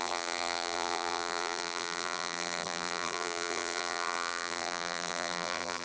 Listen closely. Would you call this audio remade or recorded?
remade